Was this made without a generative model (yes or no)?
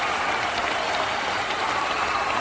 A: yes